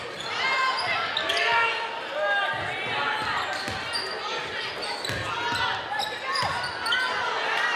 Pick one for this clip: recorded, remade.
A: recorded